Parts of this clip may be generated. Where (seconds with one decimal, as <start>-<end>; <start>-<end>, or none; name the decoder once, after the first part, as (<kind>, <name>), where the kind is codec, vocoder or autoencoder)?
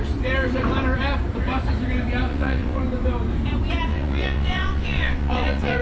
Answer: 2.3-2.8 (vocoder, WaveNeXt); 3.9-5.8